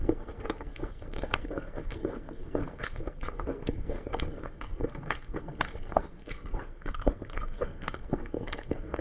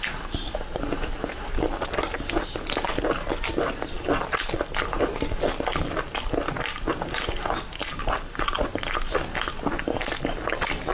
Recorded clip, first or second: second